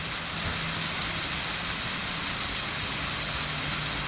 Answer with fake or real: real